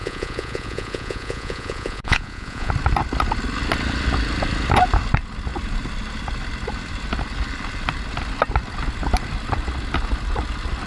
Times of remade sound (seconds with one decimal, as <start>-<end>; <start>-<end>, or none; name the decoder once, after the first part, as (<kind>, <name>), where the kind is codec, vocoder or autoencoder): 0.0-2.7 (vocoder, Vocos)